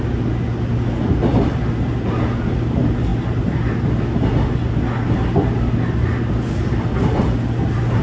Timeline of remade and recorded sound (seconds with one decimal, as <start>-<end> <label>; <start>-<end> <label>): 0.0-8.0 recorded